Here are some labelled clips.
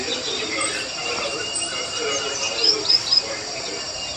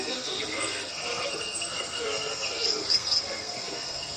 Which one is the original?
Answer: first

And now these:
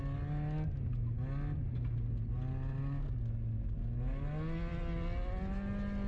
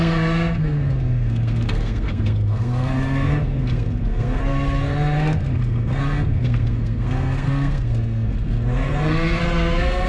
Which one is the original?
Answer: first